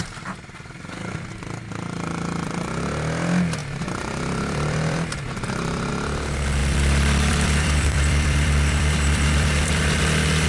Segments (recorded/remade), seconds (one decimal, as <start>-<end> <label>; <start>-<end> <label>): 0.0-3.6 recorded; 3.6-5.9 remade; 5.9-6.6 recorded; 6.6-10.0 remade; 10.0-10.5 recorded